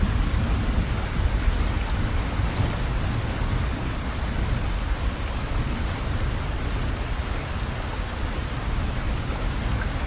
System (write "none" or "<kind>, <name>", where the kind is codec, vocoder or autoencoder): none